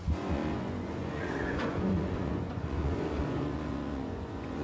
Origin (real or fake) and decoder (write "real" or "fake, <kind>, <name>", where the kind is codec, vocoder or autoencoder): fake, vocoder, Vocos